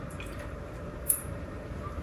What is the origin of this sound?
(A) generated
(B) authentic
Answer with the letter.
A